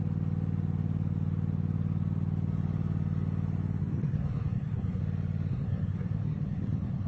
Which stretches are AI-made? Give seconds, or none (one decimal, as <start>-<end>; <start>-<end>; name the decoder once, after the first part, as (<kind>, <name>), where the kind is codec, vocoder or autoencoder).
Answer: 3.8-5.0 (codec, SNAC); 5.5-7.1